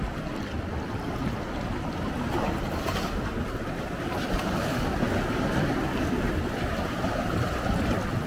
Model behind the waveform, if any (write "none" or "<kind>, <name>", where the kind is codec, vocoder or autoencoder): none